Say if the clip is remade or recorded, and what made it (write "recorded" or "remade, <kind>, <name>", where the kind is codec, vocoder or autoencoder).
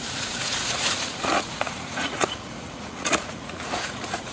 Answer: remade, vocoder, Vocos